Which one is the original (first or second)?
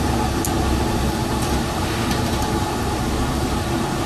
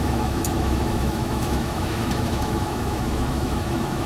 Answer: first